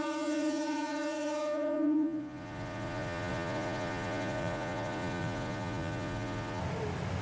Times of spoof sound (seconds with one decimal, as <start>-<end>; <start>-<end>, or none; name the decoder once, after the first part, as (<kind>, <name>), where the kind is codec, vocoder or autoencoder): 0.0-6.6 (vocoder, Vocos)